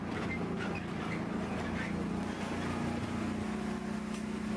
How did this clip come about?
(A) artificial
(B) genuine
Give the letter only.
B